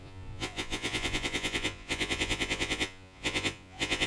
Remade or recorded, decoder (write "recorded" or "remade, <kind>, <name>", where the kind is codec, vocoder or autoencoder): remade, vocoder, Vocos